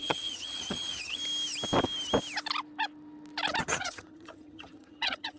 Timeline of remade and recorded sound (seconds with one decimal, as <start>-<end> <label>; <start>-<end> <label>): 0.0-1.2 remade; 1.2-3.6 recorded; 3.6-5.4 remade